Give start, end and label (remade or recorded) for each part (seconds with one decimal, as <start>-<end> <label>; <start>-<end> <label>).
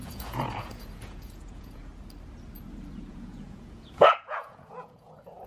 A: 0.0-1.9 remade; 1.9-3.1 recorded; 3.1-5.5 remade